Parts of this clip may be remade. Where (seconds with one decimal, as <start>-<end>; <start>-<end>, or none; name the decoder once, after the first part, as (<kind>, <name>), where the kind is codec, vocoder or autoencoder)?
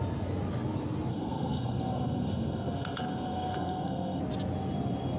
1.1-4.2 (codec, SNAC)